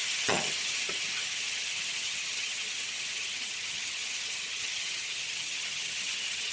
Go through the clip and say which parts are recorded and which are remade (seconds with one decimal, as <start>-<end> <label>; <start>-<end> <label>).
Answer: 0.0-6.5 remade